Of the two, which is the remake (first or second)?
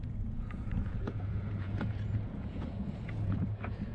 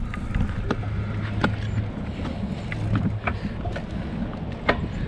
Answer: first